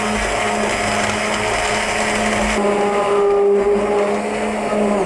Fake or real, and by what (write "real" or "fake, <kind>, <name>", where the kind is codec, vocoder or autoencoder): real